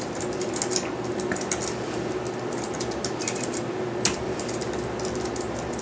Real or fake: real